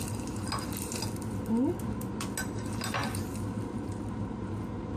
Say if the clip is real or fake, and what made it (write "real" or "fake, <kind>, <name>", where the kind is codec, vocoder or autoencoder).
real